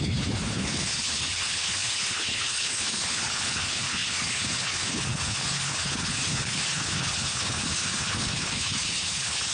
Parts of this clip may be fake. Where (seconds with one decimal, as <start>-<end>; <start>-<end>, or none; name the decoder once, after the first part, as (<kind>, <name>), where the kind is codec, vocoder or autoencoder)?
0.0-9.5 (codec, HILCodec)